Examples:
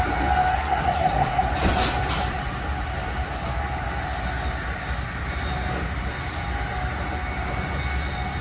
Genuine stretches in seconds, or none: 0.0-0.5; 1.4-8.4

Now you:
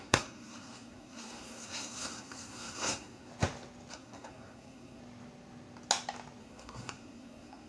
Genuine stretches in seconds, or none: 3.3-3.9; 5.0-6.4

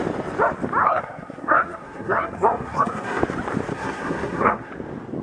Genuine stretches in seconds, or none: 0.0-0.8; 3.2-3.7; 4.7-5.2

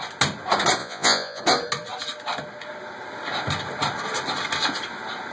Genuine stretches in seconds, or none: 0.0-0.8; 1.4-5.3

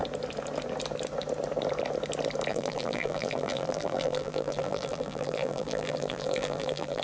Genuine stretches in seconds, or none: 0.0-2.5

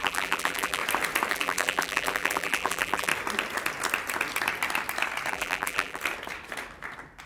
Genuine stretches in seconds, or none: 0.8-1.3; 3.1-5.3; 6.0-7.3

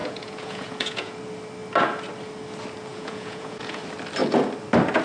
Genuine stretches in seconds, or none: 1.2-2.9; 3.8-5.0

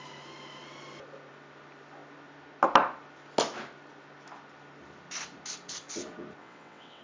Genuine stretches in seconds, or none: 0.0-6.4